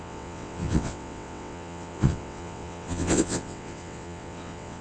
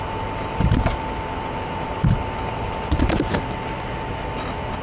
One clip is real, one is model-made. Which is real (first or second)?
second